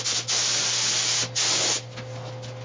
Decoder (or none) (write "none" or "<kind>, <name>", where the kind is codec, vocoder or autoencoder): none